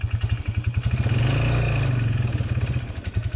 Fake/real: real